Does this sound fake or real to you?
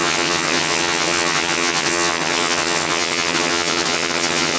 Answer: fake